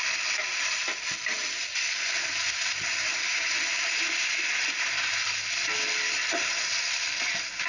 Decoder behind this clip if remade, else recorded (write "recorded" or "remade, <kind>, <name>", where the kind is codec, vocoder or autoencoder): recorded